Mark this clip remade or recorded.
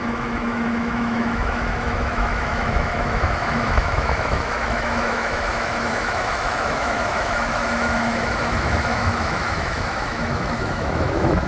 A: remade